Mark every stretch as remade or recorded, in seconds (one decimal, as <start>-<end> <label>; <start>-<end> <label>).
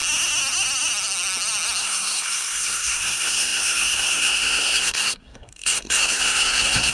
0.0-1.8 recorded; 1.8-6.9 remade